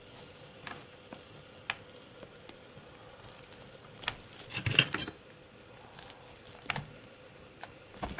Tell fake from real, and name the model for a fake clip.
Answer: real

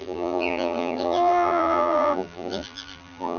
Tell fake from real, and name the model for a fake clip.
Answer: fake, vocoder, BigVGAN v2